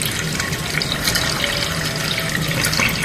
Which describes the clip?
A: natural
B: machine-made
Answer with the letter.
A